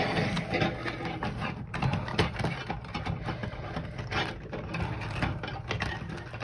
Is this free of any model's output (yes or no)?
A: yes